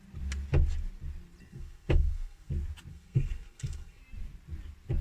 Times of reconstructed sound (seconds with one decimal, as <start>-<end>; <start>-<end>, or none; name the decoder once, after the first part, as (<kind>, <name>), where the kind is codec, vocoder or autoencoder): 1.5-2.5 (codec, SNAC); 2.9-4.0